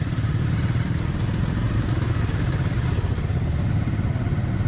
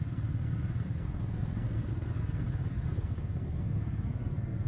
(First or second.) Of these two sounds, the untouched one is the first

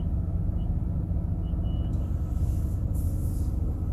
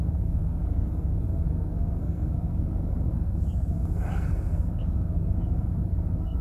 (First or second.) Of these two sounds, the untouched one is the first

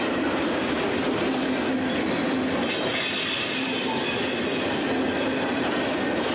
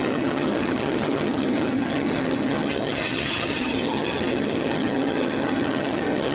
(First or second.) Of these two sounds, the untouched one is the first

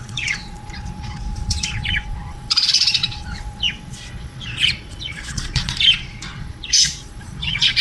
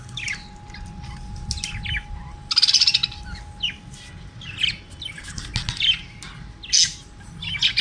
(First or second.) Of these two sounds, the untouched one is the second